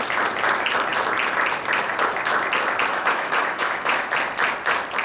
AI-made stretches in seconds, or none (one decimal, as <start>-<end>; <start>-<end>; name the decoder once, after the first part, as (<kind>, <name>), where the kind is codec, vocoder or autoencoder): 2.9-4.1 (autoencoder, DAC-VAE)